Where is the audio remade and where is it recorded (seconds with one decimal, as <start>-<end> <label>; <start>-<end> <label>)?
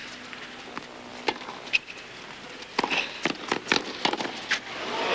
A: 0.0-5.1 recorded